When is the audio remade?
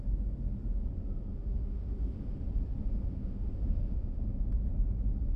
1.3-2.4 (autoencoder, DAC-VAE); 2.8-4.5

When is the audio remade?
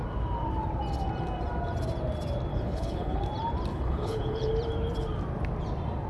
2.5-3.2 (codec, HILCodec); 3.7-4.5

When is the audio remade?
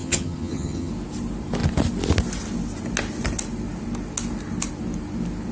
0.0-0.9 (vocoder, HiFi-GAN)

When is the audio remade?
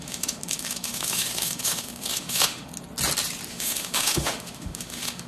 0.0-2.7 (autoencoder, DAC-VAE); 3.5-5.3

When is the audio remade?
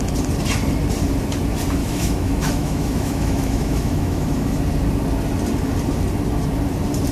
1.8-4.6 (autoencoder, DAC-VAE)